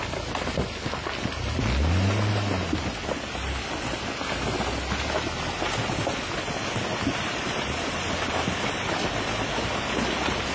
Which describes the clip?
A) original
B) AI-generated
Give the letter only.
A